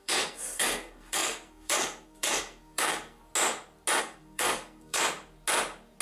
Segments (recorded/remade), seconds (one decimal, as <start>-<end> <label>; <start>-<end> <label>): 0.0-3.3 remade; 3.3-4.0 recorded; 4.0-5.0 remade; 5.0-6.0 recorded